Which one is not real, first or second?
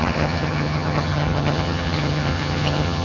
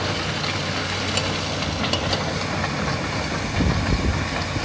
first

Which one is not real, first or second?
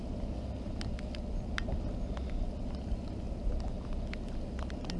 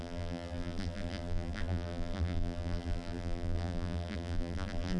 second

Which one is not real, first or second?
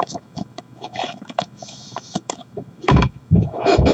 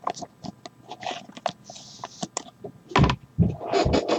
first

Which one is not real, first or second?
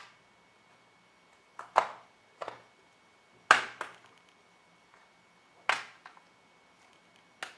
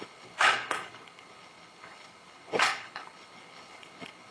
second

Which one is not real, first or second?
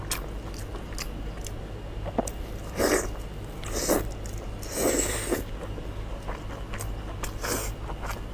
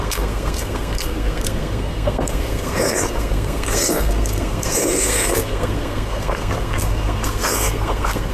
second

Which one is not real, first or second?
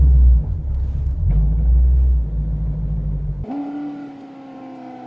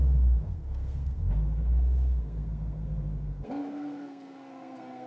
second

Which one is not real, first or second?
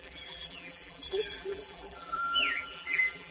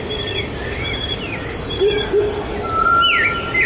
first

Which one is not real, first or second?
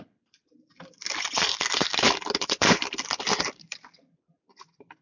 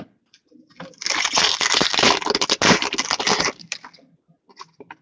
first